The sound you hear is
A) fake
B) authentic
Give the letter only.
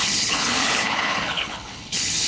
A